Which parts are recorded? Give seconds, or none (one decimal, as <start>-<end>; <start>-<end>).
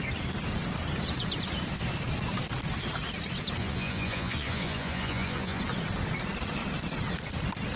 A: 0.0-3.6; 5.6-7.8